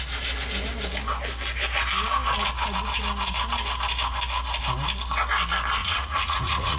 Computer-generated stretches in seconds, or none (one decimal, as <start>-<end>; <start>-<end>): 5.8-6.8